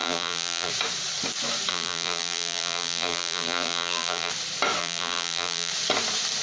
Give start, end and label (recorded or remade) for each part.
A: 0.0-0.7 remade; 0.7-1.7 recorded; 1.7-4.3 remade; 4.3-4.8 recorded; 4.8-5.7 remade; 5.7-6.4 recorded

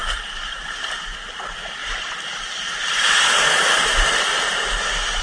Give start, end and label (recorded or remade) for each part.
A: 0.0-0.9 remade; 0.9-1.8 recorded; 1.8-3.5 remade; 3.5-5.2 recorded

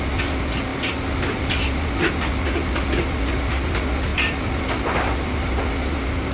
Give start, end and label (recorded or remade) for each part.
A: 0.0-6.3 recorded

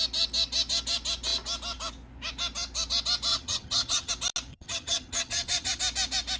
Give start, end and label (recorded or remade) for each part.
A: 0.0-3.3 recorded; 3.3-4.1 remade; 4.1-4.5 recorded; 4.5-5.8 remade; 5.8-6.4 recorded

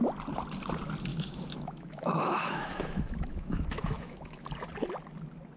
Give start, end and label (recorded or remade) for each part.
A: 0.0-1.1 recorded; 1.1-4.5 remade; 4.5-5.6 recorded

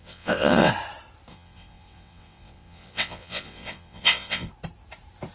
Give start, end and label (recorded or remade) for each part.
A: 0.0-0.7 remade; 0.7-1.3 recorded; 1.3-4.5 remade; 4.5-5.3 recorded

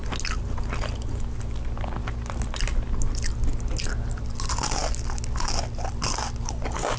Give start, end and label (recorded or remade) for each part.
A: 0.0-7.0 recorded